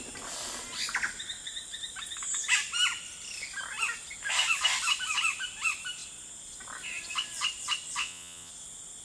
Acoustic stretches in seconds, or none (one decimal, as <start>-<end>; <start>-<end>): 0.0-8.0; 8.5-9.0